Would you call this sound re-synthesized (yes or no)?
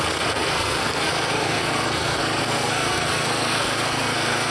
yes